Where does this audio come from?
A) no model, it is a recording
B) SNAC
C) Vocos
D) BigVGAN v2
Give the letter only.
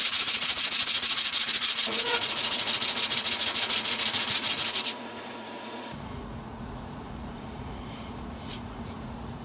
C